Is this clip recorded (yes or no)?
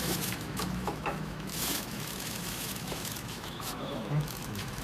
no